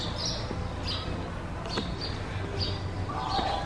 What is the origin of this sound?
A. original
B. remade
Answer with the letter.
A